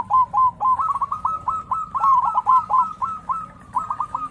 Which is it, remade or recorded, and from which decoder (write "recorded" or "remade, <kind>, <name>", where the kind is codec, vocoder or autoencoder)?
recorded